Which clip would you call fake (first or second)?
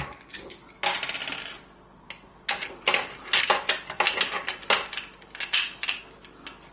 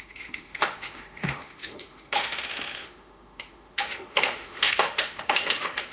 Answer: second